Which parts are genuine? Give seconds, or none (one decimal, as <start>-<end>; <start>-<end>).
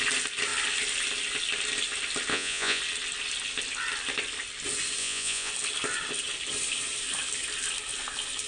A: 0.0-2.3; 2.8-5.0; 5.5-8.5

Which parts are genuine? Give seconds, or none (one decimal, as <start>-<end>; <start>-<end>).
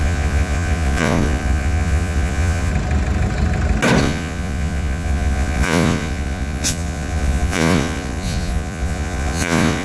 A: 2.7-4.0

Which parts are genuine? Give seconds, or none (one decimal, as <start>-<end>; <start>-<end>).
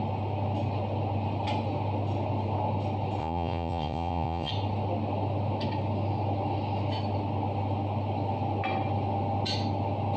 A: 0.0-3.2; 4.5-10.2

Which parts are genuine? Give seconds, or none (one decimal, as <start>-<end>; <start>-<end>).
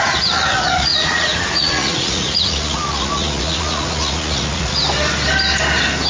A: 4.8-6.1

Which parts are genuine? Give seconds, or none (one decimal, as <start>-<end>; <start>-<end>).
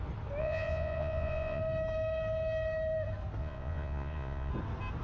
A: 0.0-0.4; 1.6-3.4; 4.5-5.0